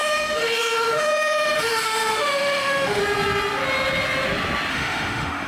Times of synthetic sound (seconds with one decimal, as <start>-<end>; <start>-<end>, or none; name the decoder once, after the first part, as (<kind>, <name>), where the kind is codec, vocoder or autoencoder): 0.0-3.0 (autoencoder, DAC-VAE); 4.7-5.5